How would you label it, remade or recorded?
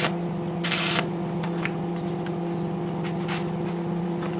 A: recorded